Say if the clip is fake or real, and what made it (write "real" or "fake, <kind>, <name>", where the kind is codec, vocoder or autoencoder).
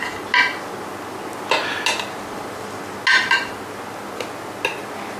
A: real